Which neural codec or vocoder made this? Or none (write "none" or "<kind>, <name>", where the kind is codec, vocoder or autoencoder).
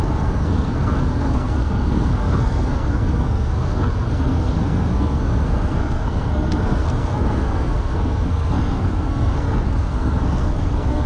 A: codec, SNAC